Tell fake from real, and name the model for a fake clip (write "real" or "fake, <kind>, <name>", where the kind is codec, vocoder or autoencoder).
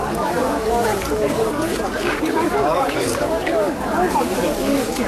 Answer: fake, codec, DAC